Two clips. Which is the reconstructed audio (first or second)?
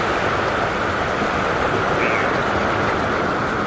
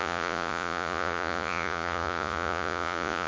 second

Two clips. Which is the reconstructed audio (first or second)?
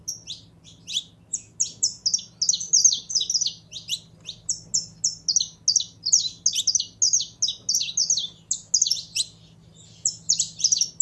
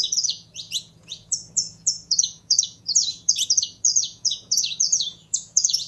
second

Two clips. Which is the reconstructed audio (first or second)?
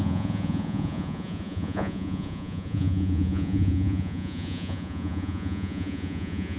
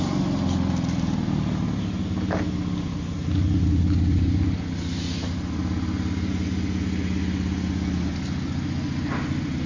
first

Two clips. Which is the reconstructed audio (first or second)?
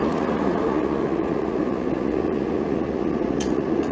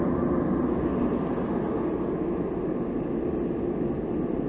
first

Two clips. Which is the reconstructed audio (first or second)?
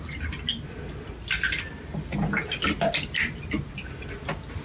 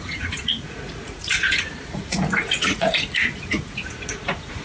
second